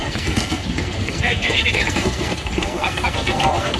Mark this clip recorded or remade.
remade